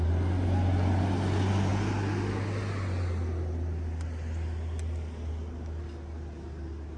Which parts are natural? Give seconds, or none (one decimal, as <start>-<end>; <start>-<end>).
0.0-7.0